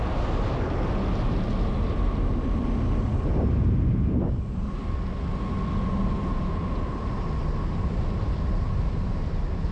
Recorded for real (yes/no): yes